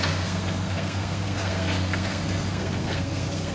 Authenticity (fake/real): fake